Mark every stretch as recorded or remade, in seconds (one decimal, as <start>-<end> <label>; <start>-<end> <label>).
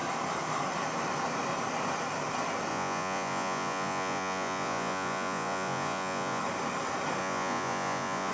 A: 0.0-2.7 recorded; 2.7-6.4 remade; 6.4-7.2 recorded; 7.2-8.3 remade